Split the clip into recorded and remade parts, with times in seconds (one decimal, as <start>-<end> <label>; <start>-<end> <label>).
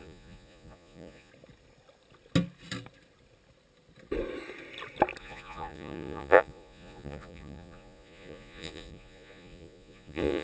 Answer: 0.0-1.3 remade; 1.3-5.2 recorded; 5.2-10.4 remade